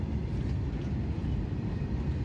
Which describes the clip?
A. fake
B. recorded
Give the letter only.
B